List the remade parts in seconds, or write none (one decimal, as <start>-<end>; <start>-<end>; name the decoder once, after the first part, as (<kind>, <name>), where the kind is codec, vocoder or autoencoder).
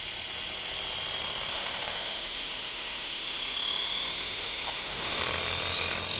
1.5-5.2 (autoencoder, DAC-VAE)